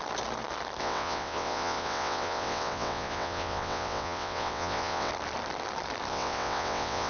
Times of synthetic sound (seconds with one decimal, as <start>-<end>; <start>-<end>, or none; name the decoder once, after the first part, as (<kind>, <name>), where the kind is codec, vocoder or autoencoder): 0.8-5.1 (vocoder, WaveNeXt); 6.1-7.1